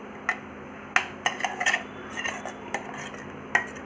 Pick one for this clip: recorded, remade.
recorded